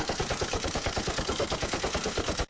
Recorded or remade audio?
remade